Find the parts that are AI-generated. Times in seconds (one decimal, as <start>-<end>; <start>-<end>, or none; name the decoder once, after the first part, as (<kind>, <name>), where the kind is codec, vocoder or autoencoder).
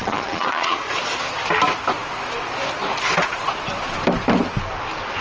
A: 0.0-1.0 (vocoder, Vocos)